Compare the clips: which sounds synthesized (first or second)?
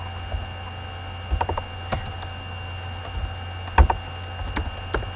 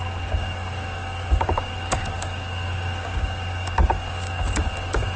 second